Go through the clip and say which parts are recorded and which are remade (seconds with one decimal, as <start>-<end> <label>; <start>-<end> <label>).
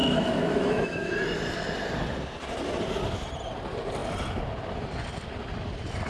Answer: 0.0-1.1 remade; 1.1-6.1 recorded